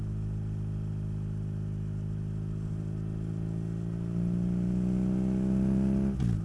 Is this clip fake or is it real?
real